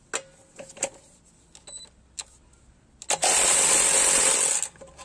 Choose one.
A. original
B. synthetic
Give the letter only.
A